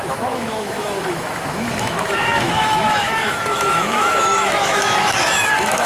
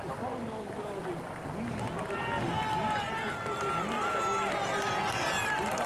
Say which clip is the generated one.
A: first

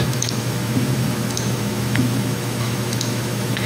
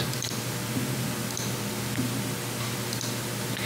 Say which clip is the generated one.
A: first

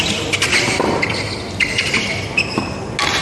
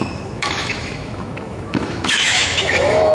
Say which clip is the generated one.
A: second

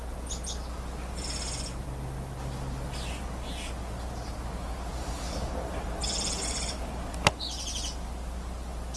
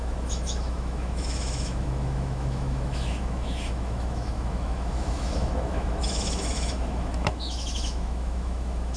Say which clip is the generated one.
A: second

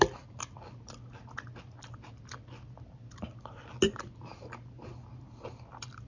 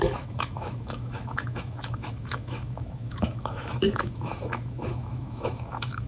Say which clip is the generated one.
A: second